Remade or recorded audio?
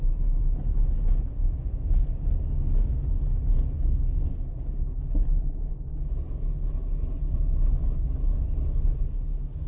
recorded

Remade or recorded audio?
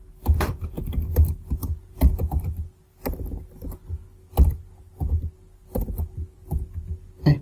recorded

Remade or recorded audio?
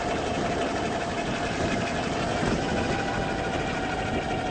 recorded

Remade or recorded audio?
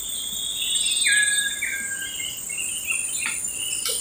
recorded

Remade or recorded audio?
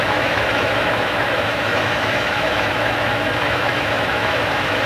remade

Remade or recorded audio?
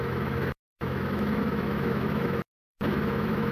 remade